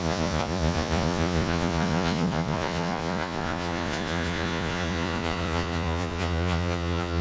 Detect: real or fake fake